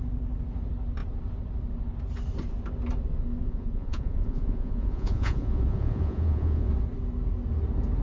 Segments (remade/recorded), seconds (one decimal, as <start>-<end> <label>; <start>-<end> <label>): 0.0-3.4 recorded; 3.4-6.7 remade; 6.7-8.0 recorded